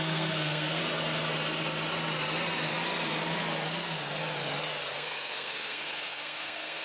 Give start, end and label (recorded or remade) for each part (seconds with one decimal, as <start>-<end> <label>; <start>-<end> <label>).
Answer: 0.0-0.8 remade; 0.8-4.9 recorded; 4.9-6.8 remade